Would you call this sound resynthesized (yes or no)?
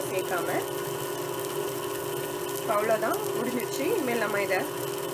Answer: no